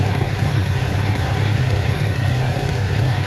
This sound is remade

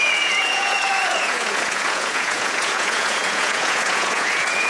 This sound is remade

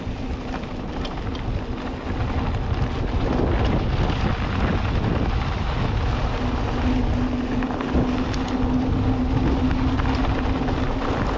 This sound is recorded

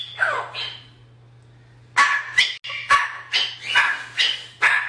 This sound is recorded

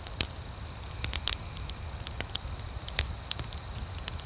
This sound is recorded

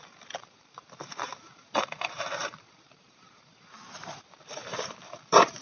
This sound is remade